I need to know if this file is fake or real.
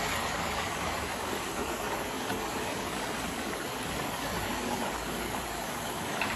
fake